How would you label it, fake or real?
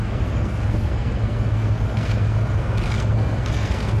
fake